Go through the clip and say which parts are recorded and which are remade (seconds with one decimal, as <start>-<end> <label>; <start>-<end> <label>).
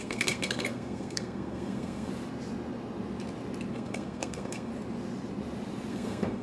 0.0-2.1 remade; 2.1-3.7 recorded; 3.7-4.7 remade; 4.7-5.9 recorded; 5.9-6.4 remade